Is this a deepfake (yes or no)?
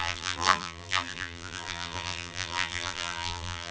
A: yes